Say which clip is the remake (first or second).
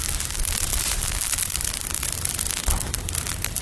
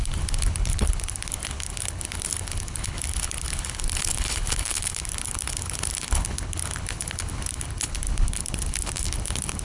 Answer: second